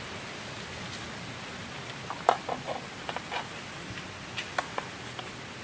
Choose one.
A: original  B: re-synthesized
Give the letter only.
A